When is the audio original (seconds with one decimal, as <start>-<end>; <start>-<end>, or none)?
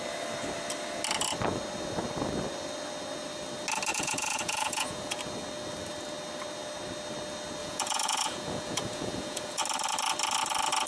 0.0-3.9; 5.2-7.6; 9.6-10.9